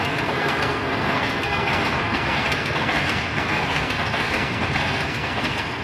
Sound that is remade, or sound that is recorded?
remade